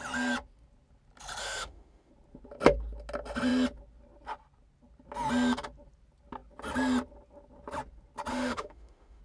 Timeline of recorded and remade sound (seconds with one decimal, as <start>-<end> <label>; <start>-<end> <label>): 0.0-1.4 recorded; 1.4-2.1 remade; 2.1-8.3 recorded; 8.3-9.2 remade